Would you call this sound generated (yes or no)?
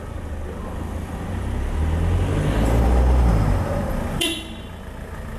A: no